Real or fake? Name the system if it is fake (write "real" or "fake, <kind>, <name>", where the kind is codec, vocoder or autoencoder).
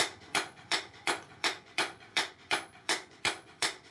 fake, vocoder, Vocos